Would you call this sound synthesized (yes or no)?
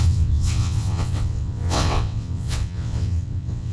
yes